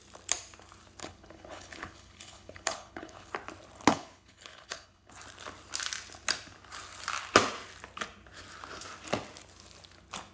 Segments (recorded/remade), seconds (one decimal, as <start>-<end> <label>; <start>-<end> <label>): 0.0-1.0 recorded; 1.0-3.3 remade; 3.3-3.9 recorded; 3.9-5.1 remade; 5.1-10.3 recorded

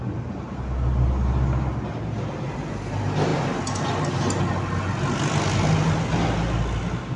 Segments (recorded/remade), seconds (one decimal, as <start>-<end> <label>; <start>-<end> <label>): 0.0-7.2 recorded